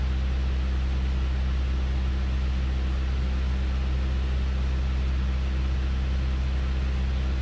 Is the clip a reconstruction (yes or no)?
no